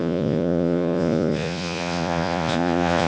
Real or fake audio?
fake